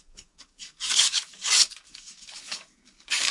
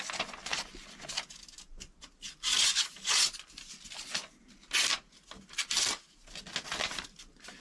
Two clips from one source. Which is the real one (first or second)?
second